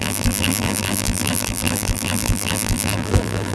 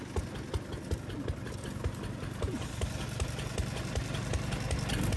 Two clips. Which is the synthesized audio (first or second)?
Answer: first